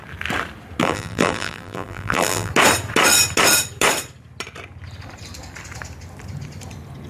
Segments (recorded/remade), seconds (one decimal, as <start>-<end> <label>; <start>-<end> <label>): 0.0-0.8 recorded; 0.8-2.5 remade; 2.5-7.1 recorded